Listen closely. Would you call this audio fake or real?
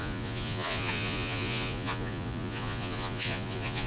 fake